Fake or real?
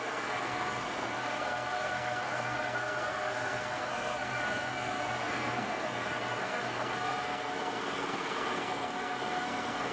fake